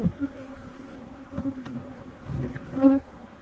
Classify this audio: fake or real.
fake